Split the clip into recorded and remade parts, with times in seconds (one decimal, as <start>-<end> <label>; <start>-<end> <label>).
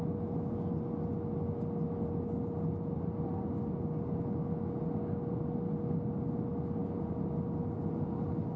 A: 0.0-8.6 recorded